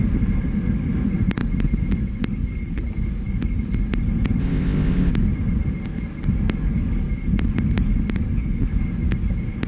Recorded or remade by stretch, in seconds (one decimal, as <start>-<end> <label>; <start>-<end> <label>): 0.0-4.4 recorded; 4.4-5.1 remade; 5.1-9.7 recorded